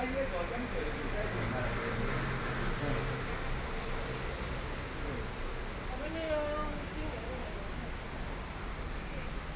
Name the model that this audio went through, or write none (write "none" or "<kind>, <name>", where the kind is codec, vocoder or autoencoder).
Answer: none